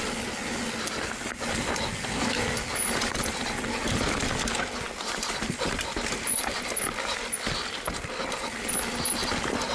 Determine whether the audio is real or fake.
real